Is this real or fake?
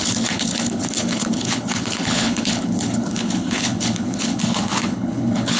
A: fake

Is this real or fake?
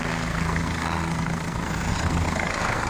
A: fake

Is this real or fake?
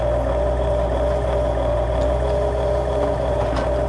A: real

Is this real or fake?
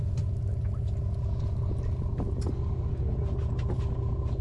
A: real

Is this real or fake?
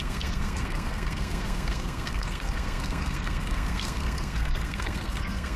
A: fake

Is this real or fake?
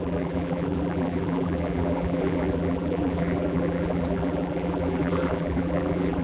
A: fake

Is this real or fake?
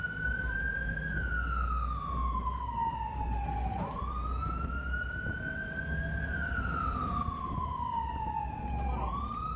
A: real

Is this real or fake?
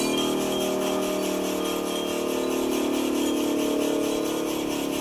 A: real